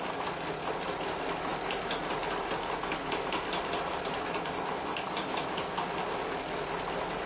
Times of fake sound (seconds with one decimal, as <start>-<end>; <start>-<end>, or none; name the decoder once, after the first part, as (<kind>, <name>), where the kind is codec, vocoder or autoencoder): none